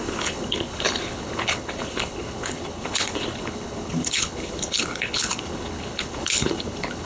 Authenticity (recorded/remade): remade